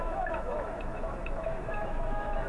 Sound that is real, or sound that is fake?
fake